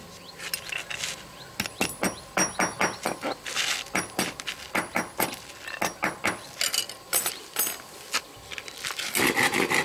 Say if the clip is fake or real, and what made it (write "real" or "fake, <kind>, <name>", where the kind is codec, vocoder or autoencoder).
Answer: real